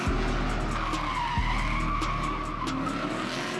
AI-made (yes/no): no